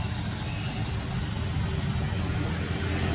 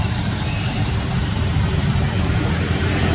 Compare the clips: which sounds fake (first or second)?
second